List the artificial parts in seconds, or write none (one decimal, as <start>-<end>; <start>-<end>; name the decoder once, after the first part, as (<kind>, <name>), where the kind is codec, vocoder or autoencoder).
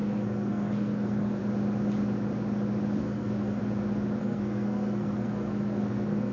0.0-1.4 (codec, SNAC); 3.0-3.6; 4.2-6.3